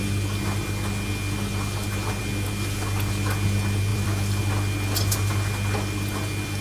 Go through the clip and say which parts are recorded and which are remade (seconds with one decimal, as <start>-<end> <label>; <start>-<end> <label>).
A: 0.0-3.9 recorded; 3.9-4.4 remade; 4.4-6.6 recorded